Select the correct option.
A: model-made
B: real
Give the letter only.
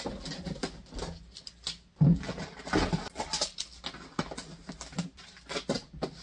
B